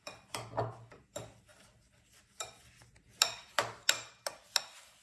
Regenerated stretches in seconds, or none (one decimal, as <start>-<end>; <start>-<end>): none